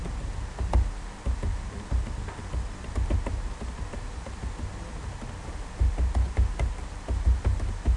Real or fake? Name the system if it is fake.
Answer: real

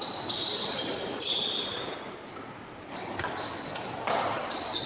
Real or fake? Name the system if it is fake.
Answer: fake, vocoder, BigVGAN v2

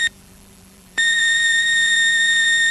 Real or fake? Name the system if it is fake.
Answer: fake, vocoder, BigVGAN v2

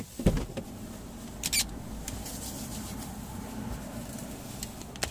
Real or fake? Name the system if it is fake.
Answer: real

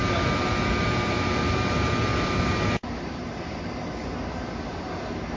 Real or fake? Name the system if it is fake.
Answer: fake, vocoder, BigVGAN v2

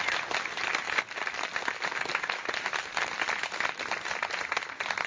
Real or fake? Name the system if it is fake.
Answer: fake, vocoder, BigVGAN v2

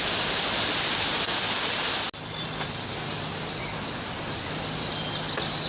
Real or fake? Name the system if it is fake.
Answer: real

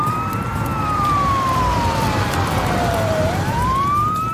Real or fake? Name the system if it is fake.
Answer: fake, vocoder, BigVGAN v2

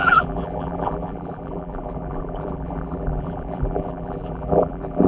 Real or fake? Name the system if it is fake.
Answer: fake, vocoder, BigVGAN v2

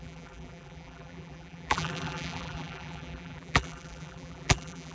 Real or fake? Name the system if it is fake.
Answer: fake, vocoder, BigVGAN v2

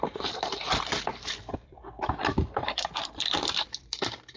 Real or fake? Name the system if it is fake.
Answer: fake, vocoder, BigVGAN v2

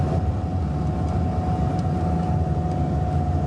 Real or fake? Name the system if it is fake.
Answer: real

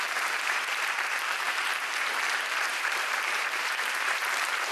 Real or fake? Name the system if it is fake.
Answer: fake, vocoder, BigVGAN v2